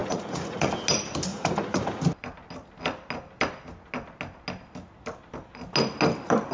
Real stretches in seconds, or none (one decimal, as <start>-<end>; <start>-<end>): 0.7-1.3; 1.9-6.5

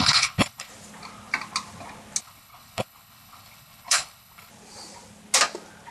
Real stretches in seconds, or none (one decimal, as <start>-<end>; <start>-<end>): 0.7-2.2; 4.5-5.9

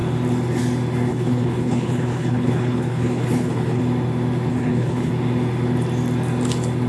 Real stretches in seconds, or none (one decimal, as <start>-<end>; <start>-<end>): 0.0-1.1; 3.8-4.5; 5.1-6.9

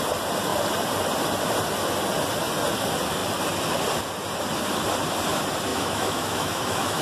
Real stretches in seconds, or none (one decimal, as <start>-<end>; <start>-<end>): 0.0-5.7